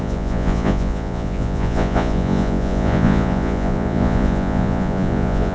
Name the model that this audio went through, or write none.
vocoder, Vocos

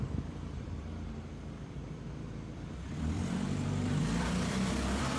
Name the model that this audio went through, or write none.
vocoder, BigVGAN v2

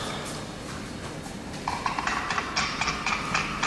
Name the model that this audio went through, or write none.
none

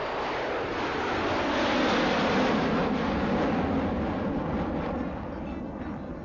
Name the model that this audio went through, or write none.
none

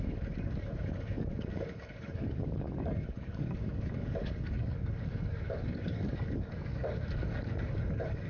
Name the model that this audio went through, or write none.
codec, DAC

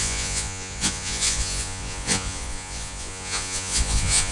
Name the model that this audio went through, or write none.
vocoder, Vocos